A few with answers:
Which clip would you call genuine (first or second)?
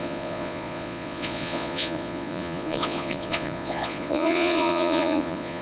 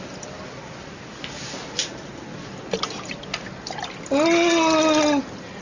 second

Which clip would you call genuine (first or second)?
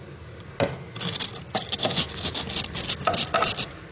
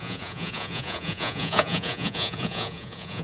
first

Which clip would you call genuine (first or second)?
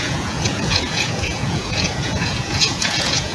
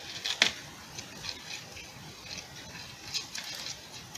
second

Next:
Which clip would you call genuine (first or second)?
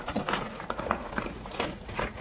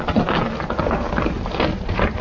second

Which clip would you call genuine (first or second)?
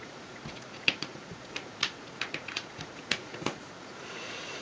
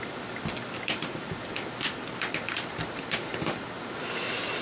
second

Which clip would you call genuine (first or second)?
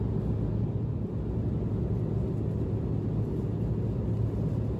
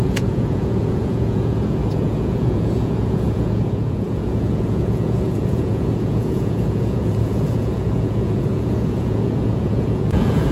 first